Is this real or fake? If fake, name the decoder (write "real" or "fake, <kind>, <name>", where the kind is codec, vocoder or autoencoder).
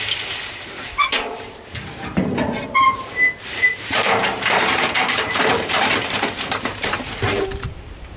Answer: fake, vocoder, BigVGAN v2